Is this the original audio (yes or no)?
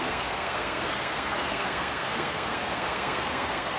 no